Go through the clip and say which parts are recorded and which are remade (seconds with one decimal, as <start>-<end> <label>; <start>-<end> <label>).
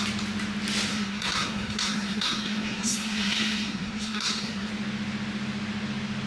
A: 0.0-0.9 recorded; 0.9-4.7 remade; 4.7-6.3 recorded